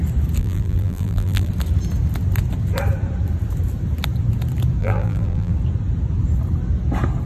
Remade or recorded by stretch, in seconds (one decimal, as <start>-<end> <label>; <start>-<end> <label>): 0.0-0.4 recorded; 0.4-1.5 remade; 1.5-4.8 recorded; 4.8-5.5 remade; 5.5-7.3 recorded